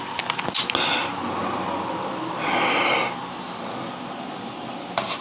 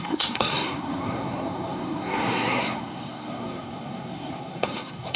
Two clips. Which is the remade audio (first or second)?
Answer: second